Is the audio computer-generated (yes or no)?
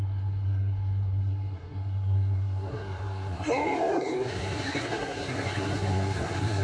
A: yes